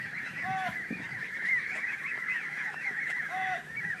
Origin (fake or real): fake